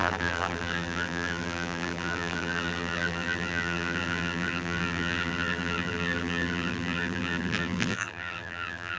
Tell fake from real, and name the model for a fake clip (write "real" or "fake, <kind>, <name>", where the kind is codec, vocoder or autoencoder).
fake, vocoder, BigVGAN v2